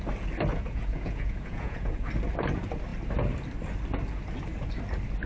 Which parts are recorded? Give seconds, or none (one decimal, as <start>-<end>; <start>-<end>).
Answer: 0.0-0.5; 2.1-5.3

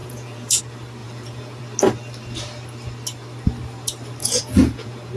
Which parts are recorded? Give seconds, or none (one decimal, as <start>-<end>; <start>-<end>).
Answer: 0.6-1.0; 1.6-4.2